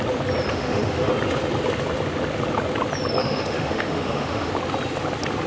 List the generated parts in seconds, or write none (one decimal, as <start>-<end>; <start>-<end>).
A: 0.5-1.1; 3.2-4.5